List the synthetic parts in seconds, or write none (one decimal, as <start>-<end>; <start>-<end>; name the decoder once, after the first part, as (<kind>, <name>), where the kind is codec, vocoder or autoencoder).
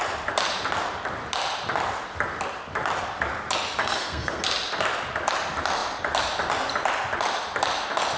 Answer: 3.8-4.4 (codec, SNAC)